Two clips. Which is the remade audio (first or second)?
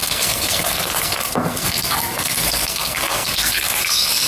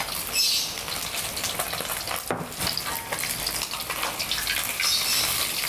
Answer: first